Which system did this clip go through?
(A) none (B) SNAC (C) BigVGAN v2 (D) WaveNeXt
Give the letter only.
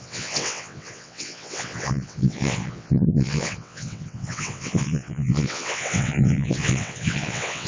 D